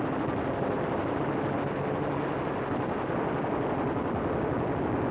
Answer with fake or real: real